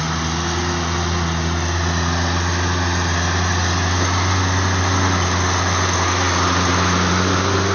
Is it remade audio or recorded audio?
recorded